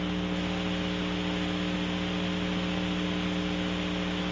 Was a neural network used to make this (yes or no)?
no